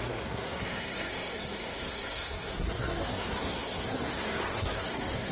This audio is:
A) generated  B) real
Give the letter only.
A